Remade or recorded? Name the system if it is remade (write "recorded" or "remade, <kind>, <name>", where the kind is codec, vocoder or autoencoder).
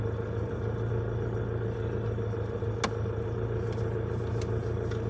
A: recorded